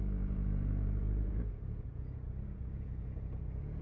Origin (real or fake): fake